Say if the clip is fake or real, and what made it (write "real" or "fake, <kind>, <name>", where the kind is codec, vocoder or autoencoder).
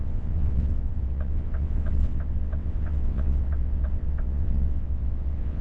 fake, vocoder, WaveNeXt